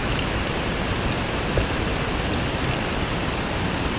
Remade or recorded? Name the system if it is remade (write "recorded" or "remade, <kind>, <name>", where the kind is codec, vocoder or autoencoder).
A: recorded